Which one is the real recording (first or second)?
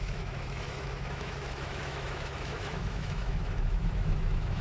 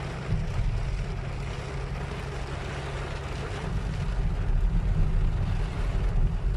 second